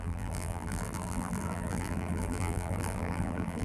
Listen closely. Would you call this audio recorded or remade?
remade